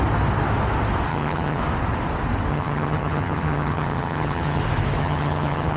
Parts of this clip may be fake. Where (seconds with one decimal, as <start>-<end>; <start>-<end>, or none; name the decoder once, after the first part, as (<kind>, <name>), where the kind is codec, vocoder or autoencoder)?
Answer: 1.1-1.6 (vocoder, HiFi-GAN); 2.5-4.6; 5.0-5.8